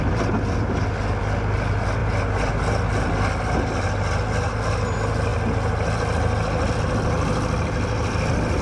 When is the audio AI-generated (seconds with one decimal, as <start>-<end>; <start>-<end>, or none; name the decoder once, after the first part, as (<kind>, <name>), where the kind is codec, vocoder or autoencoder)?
none